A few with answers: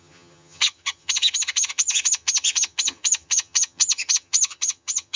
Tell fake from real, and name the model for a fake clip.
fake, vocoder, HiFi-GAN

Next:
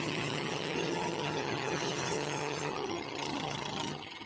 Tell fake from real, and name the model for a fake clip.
fake, vocoder, HiFi-GAN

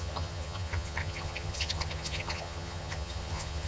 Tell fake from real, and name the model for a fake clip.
fake, vocoder, HiFi-GAN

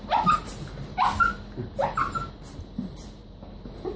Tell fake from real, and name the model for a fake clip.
real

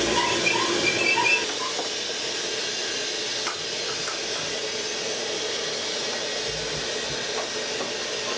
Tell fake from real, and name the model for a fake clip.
real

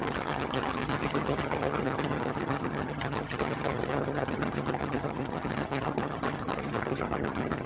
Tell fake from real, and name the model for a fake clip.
fake, vocoder, HiFi-GAN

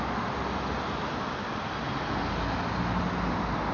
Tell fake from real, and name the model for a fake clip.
real